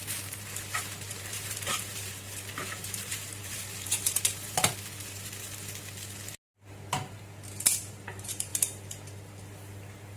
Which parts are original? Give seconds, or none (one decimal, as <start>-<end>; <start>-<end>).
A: 4.7-8.1; 8.5-10.2